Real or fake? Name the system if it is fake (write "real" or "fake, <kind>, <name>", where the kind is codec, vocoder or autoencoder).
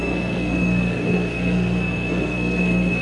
fake, codec, SNAC